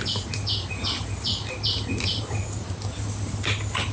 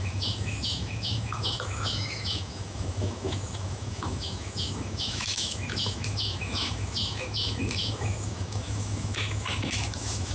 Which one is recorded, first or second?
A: first